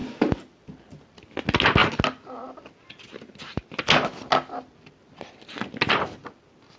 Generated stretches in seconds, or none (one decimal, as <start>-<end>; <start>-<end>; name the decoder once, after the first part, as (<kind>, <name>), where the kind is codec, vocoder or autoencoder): 0.0-0.7 (vocoder, BigVGAN v2)